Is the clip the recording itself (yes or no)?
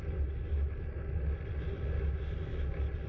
yes